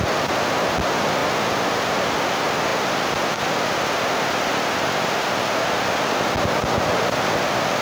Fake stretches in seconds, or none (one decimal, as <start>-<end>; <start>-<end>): none